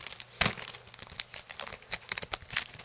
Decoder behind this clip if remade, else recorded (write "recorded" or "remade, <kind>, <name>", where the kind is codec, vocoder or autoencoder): recorded